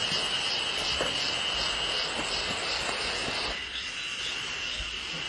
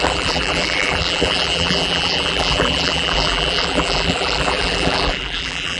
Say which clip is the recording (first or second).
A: first